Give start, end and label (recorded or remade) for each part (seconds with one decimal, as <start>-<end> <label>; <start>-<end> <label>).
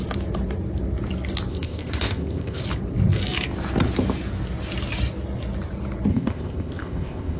0.0-1.5 recorded; 1.5-2.6 remade; 2.6-6.1 recorded; 6.1-7.4 remade